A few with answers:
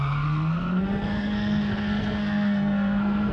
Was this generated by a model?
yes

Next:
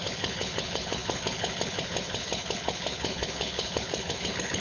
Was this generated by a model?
yes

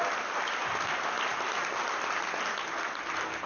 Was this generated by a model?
no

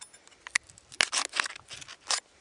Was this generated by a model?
no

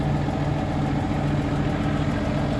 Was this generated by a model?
no